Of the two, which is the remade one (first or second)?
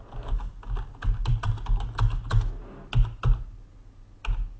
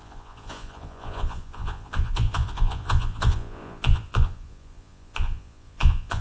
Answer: second